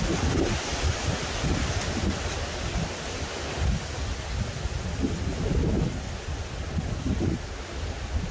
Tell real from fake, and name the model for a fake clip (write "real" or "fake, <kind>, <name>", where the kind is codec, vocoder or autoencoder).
real